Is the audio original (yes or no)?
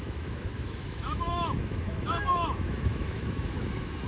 no